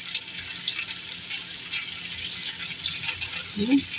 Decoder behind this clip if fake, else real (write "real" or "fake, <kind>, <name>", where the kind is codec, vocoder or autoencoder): real